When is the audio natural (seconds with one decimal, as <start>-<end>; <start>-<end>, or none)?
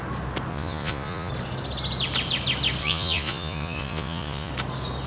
0.0-0.5; 1.3-2.8; 4.5-5.1